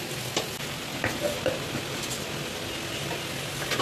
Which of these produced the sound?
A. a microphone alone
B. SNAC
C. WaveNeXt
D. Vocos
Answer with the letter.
A